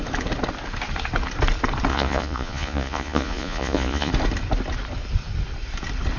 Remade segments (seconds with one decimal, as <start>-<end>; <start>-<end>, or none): 1.9-4.1